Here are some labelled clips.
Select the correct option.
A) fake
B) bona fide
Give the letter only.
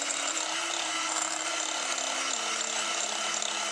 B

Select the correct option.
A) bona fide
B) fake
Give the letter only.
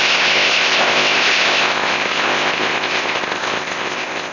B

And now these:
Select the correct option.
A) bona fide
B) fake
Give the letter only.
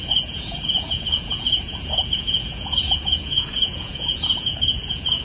B